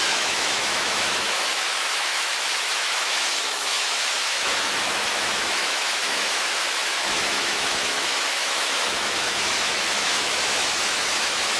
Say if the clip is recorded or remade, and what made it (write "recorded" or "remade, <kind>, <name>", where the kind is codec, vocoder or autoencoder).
remade, autoencoder, DAC-VAE